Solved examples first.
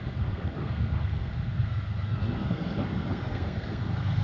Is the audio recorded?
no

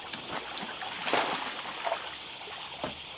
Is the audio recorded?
yes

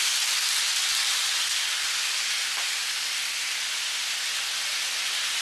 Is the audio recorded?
yes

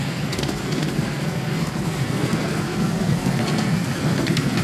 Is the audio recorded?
no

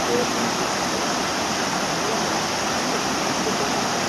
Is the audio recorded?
no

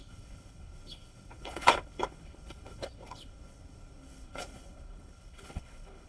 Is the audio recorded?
no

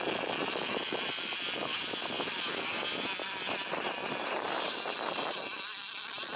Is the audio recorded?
yes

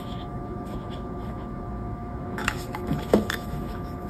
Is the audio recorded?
no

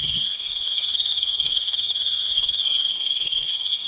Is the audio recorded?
no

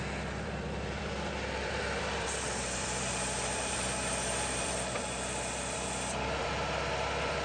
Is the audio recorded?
no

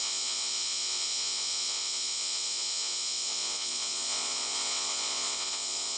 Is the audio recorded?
no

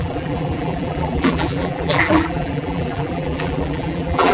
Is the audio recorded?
no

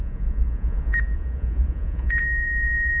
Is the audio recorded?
no